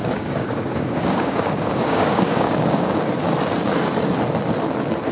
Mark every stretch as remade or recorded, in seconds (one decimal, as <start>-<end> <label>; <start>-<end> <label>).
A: 0.0-3.1 remade; 3.1-5.1 recorded